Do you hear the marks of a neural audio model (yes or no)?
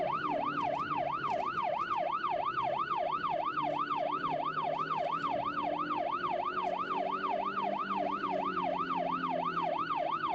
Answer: no